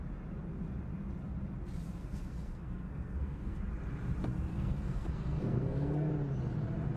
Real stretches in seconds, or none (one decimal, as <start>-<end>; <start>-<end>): 0.0-2.0; 3.6-4.5; 6.1-7.0